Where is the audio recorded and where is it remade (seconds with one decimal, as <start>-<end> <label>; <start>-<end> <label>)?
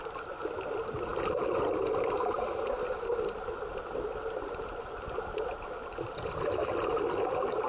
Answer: 0.0-7.7 recorded